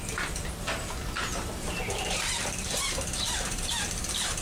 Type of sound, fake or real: fake